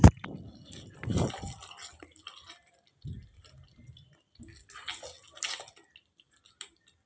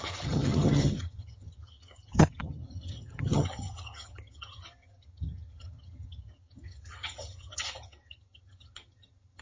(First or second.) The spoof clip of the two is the second